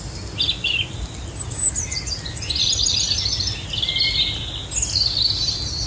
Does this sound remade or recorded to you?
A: recorded